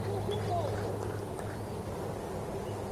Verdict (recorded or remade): recorded